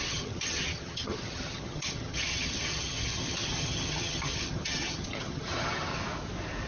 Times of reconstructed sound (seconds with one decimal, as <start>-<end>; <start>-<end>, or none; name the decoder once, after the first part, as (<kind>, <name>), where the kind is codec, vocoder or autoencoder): 0.0-5.9 (vocoder, HiFi-GAN)